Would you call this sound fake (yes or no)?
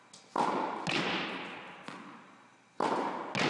no